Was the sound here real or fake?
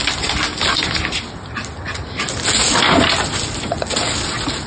real